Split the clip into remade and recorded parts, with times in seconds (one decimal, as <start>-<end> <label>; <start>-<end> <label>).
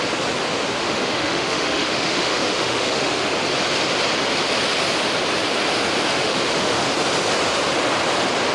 0.0-0.8 recorded; 0.8-3.3 remade; 3.3-6.1 recorded; 6.1-6.9 remade; 6.9-8.5 recorded